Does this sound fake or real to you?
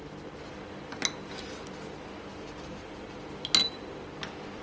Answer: real